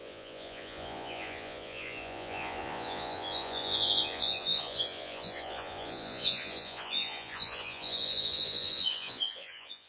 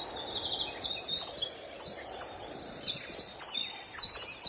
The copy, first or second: first